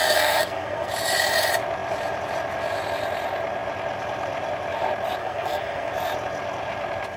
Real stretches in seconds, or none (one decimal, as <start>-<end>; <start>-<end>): 0.9-5.2; 5.9-7.2

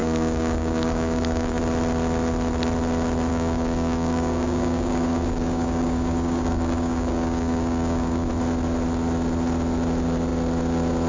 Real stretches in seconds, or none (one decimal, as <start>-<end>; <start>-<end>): 1.6-3.3; 8.3-11.1

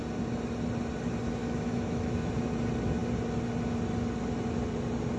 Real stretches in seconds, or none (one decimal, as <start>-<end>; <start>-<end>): 0.0-1.4; 2.3-5.2

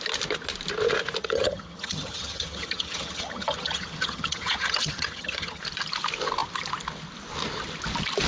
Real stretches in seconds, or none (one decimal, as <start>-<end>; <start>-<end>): 0.0-1.2; 5.6-8.3

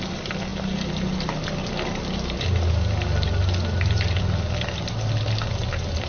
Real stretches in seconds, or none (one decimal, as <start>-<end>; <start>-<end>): 0.0-6.1